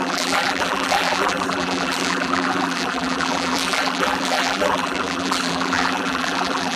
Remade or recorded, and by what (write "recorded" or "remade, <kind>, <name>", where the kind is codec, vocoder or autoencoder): remade, vocoder, BigVGAN v2